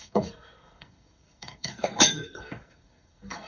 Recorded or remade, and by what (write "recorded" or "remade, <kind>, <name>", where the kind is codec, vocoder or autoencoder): remade, codec, SNAC